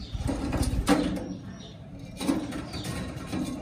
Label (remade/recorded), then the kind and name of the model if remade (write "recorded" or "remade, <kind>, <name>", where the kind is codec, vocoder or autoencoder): remade, vocoder, BigVGAN v2